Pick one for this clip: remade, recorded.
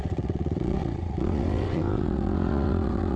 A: remade